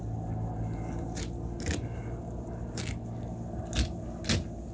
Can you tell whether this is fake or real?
real